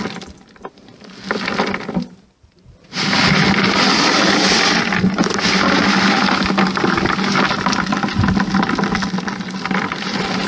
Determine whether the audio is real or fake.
real